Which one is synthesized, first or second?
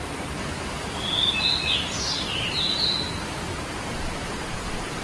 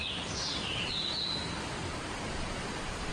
second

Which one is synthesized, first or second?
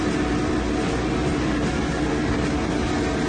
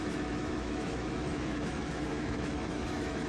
second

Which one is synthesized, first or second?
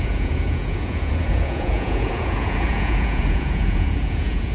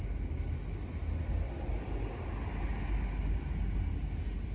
first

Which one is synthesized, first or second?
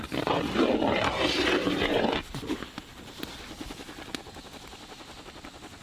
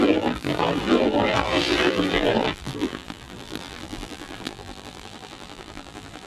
second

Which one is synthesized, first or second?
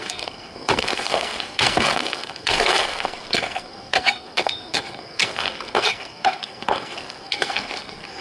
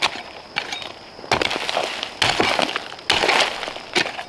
first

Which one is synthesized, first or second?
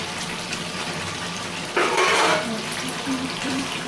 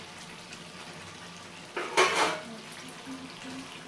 first